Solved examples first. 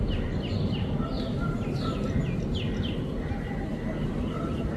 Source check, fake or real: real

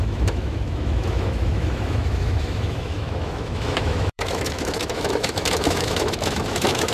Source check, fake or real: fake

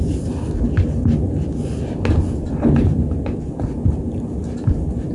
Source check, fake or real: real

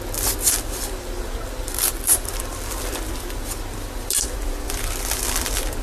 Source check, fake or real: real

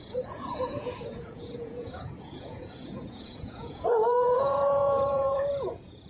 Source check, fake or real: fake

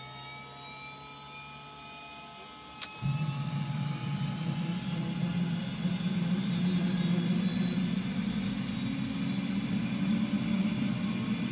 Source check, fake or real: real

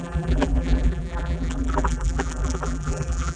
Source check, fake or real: fake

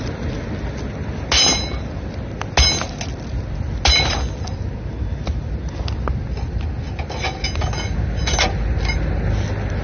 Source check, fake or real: real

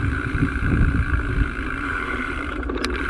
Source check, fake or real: fake